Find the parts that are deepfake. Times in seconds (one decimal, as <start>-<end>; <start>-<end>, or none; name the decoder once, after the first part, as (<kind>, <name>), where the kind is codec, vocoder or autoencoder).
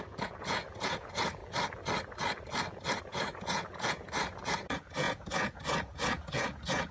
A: 0.0-1.4 (vocoder, Vocos); 3.0-6.9